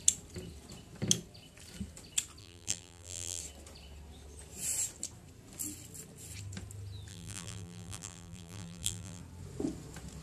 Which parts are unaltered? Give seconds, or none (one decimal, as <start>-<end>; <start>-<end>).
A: 0.0-2.4; 3.4-7.1; 9.2-10.2